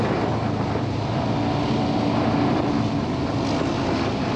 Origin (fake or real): real